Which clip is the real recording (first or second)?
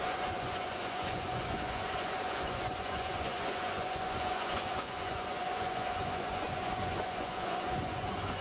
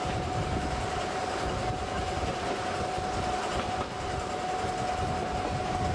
second